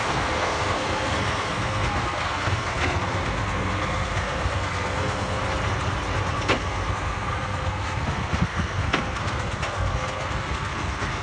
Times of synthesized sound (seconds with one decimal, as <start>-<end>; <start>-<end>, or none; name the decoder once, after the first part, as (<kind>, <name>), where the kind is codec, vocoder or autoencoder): 0.0-5.4 (codec, SNAC); 6.3-11.2